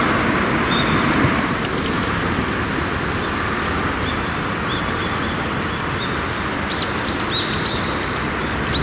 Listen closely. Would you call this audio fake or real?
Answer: real